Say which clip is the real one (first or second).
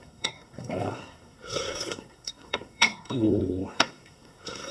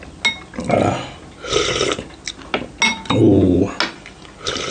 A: second